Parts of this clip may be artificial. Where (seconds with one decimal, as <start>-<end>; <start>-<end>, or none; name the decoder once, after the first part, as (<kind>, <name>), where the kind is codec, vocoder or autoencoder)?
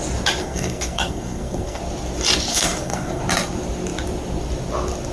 0.4-1.8 (codec, SNAC); 2.5-3.2